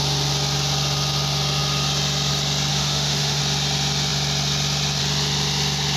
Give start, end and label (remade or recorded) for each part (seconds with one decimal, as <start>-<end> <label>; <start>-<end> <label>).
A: 0.0-2.7 recorded; 2.7-3.4 remade; 3.4-6.0 recorded